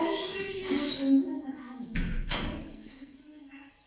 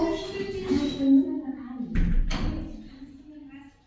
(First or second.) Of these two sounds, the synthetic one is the first